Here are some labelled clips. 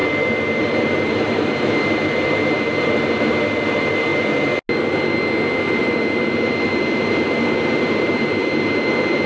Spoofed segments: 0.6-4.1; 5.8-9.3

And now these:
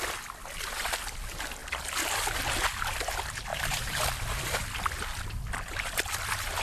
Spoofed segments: 3.5-4.0

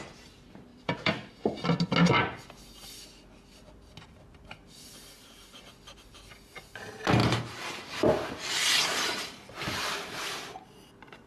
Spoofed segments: 0.7-1.3; 7.2-9.5

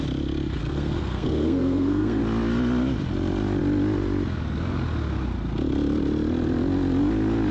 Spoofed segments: 0.6-2.2

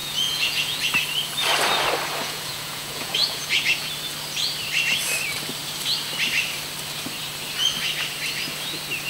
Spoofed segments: 0.0-0.8; 2.2-3.9